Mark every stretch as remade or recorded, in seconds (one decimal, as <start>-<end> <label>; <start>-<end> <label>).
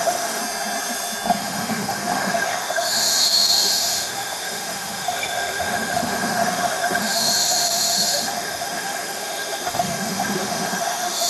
0.0-0.4 remade; 0.4-1.4 recorded; 1.4-11.3 remade